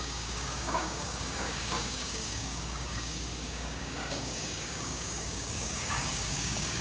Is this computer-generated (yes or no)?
yes